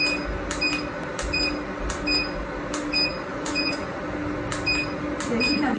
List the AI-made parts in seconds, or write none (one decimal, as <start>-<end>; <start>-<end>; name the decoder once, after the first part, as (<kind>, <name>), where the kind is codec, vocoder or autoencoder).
3.3-4.0 (vocoder, Vocos)